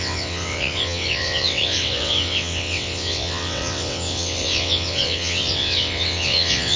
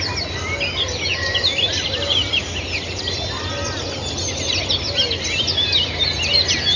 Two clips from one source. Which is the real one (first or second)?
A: second